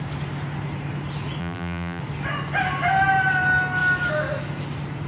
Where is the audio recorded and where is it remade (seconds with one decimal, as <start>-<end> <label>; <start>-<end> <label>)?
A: 0.0-1.4 recorded; 1.4-2.0 remade; 2.0-5.1 recorded